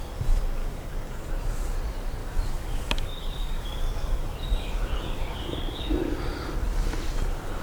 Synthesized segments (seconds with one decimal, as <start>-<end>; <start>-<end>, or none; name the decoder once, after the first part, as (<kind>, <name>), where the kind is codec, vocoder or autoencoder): 0.6-1.2 (codec, DAC); 2.2-5.9